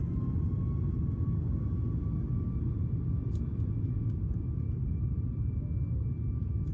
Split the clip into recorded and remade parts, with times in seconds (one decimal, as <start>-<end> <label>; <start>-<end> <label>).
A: 0.0-3.5 recorded; 3.5-5.6 remade; 5.6-6.7 recorded